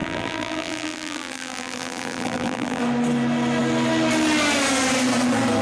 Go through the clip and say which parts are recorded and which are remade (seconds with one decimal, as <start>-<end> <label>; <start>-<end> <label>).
0.0-2.8 remade; 2.8-5.6 recorded